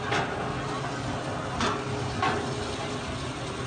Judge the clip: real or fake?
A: real